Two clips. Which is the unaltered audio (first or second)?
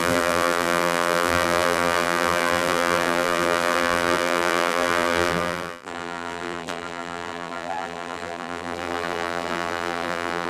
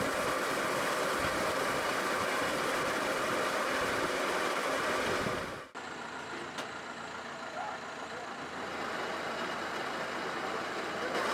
second